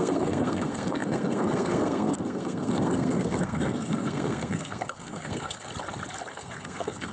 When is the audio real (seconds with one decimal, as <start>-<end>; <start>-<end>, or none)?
5.7-6.3